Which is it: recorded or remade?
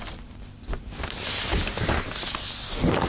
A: recorded